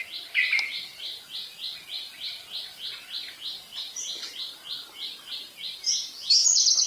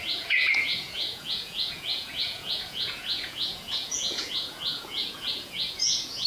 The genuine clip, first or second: first